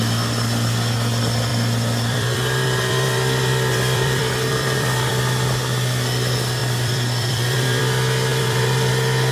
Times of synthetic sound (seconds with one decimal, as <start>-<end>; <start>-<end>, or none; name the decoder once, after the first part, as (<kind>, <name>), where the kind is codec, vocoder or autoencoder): 1.5-5.1 (vocoder, BigVGAN v2); 6.6-7.8; 8.3-8.9